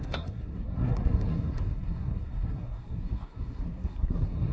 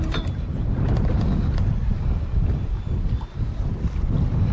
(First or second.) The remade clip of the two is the first